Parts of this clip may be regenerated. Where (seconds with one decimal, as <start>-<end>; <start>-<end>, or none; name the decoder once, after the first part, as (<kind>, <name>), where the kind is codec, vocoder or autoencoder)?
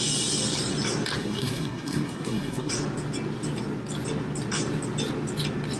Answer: 1.2-2.7 (codec, SNAC)